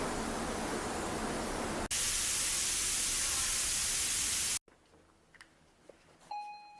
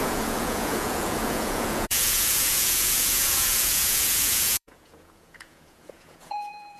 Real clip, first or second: first